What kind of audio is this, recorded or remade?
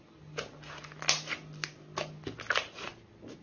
recorded